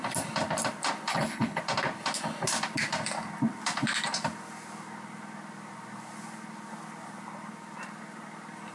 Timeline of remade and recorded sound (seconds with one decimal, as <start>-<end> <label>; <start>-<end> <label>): 0.0-1.1 recorded; 1.1-1.6 remade; 1.6-8.7 recorded